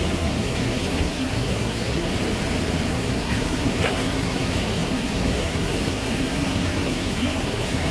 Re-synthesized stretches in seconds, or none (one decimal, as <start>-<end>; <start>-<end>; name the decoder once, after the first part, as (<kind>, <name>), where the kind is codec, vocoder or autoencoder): 0.0-2.1 (codec, SNAC); 2.9-7.9